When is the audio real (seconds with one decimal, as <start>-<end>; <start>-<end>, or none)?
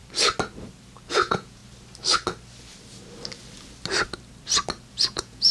0.0-1.1; 1.6-4.9